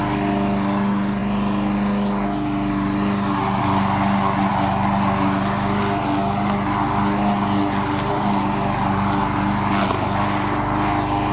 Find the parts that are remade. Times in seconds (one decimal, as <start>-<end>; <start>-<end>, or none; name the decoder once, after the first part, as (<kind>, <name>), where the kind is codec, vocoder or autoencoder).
none